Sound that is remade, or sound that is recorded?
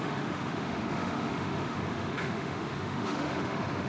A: remade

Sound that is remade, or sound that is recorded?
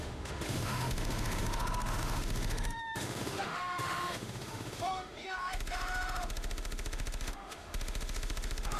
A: remade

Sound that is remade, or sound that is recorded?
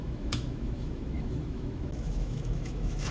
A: remade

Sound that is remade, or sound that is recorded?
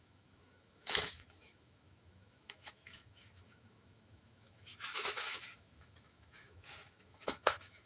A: remade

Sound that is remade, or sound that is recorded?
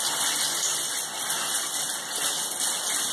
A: recorded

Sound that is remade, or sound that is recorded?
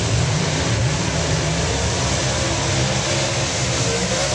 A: recorded